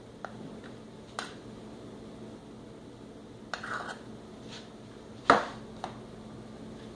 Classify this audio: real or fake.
real